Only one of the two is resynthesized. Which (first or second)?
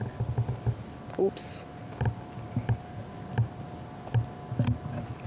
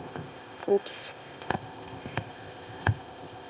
second